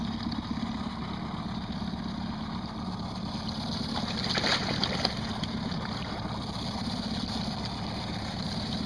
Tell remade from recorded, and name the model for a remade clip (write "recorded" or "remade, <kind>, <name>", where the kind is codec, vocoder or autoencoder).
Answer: recorded